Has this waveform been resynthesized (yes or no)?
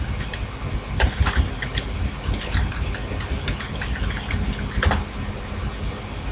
no